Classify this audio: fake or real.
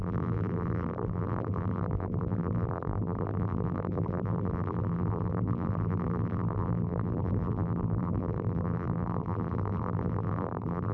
fake